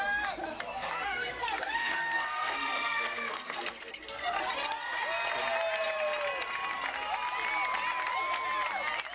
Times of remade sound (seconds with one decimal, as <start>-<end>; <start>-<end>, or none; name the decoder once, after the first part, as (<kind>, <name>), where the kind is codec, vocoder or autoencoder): 0.4-4.4 (codec, SNAC)